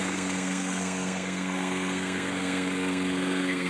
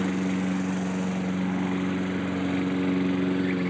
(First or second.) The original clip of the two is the second